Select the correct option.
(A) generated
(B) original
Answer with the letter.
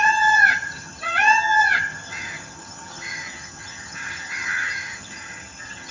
A